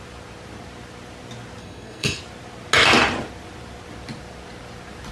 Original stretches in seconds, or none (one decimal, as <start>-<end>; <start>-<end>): 0.0-1.6; 2.2-5.1

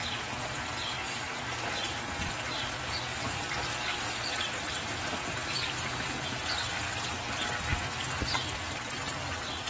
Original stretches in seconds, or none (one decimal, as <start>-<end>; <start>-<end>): 0.0-9.7

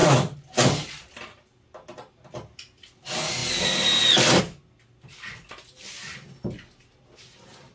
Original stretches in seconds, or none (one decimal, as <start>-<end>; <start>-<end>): 0.0-7.7

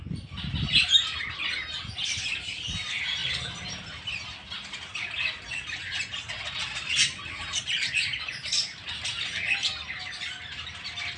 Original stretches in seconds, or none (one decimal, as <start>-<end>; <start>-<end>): 0.0-11.2

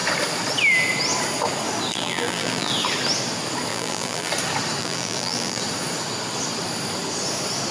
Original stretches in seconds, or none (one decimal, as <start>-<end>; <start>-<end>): 0.0-1.9; 2.7-3.7; 4.3-4.8; 5.6-7.7

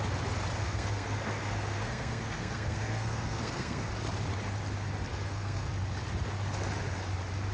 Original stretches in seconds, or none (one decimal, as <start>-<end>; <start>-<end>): 0.0-0.6; 3.9-5.1; 5.7-7.5

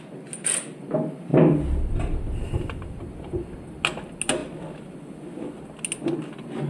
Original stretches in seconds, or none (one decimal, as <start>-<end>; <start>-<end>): 0.0-6.7

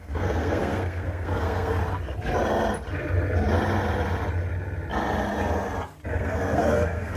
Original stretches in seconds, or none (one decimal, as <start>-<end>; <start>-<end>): 1.8-6.1